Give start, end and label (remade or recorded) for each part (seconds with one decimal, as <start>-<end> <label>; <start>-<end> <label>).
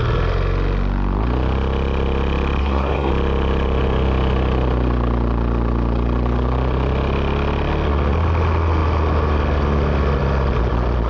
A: 0.0-2.6 recorded; 2.6-3.1 remade; 3.1-11.1 recorded